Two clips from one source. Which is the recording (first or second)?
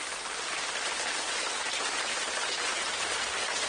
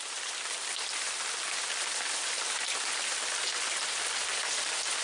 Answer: second